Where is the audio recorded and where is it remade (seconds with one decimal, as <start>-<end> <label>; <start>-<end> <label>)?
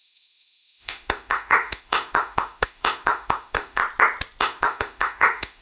0.0-3.8 remade; 3.8-4.4 recorded; 4.4-5.6 remade